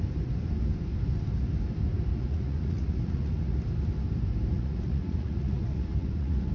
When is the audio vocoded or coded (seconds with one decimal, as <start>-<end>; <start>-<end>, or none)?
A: 2.1-3.6; 4.5-6.5